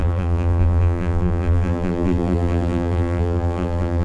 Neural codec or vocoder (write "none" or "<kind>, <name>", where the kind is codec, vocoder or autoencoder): vocoder, BigVGAN v2